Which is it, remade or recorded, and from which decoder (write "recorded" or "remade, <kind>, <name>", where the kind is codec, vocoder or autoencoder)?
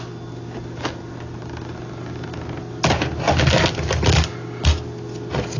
recorded